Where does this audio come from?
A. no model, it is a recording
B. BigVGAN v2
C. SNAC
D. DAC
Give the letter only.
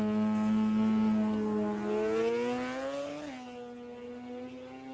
A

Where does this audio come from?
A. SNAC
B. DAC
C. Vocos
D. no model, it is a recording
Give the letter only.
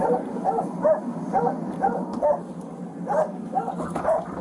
D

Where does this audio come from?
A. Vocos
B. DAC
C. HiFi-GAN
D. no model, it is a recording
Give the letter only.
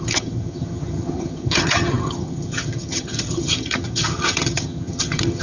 C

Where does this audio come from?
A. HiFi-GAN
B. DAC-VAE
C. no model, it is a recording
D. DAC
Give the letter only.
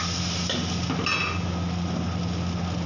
C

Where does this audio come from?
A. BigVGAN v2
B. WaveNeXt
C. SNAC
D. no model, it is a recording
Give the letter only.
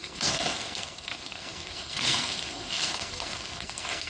C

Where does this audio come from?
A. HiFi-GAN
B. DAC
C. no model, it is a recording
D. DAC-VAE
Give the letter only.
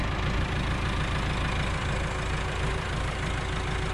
C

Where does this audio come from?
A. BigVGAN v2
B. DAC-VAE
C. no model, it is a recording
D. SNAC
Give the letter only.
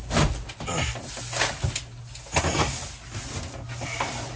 C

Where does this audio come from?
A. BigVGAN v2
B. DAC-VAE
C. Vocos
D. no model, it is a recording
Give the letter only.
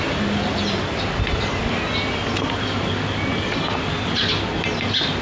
D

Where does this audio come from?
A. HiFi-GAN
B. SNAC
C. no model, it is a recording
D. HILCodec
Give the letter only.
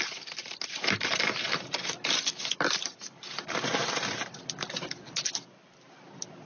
C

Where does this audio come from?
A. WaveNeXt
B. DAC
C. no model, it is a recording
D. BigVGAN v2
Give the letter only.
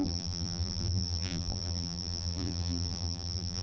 D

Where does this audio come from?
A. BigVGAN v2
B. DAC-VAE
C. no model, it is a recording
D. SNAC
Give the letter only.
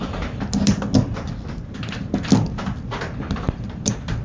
C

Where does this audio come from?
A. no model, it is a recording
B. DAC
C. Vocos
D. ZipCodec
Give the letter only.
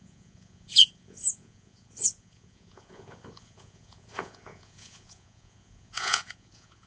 C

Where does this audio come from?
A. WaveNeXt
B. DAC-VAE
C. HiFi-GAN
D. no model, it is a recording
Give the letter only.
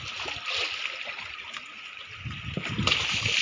D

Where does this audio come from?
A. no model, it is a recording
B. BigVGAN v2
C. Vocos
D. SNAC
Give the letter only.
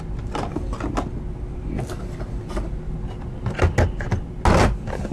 A